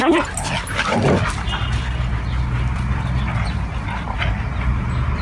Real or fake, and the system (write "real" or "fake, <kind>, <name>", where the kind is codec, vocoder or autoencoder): real